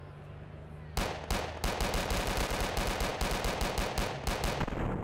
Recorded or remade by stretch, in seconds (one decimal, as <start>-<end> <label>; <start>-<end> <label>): 0.0-5.0 recorded